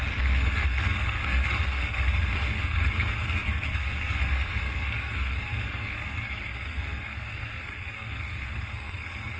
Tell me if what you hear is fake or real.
fake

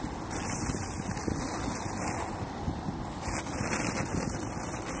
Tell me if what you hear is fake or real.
real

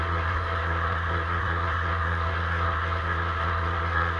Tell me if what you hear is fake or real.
fake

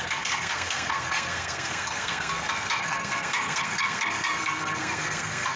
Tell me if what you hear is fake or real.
fake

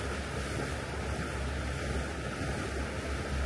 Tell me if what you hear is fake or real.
real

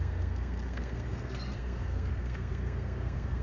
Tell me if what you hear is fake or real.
fake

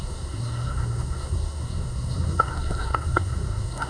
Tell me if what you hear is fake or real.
fake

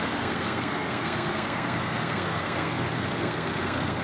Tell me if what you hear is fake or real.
fake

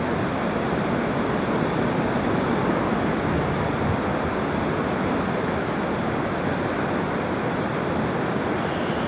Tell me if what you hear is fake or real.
real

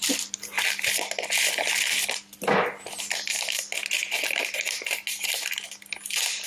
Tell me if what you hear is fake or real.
real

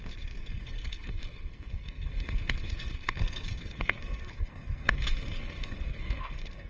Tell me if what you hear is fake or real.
fake